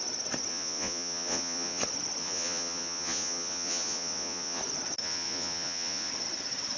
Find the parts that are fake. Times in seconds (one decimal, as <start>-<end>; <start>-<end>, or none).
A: 0.5-1.8; 2.2-4.6; 5.0-6.1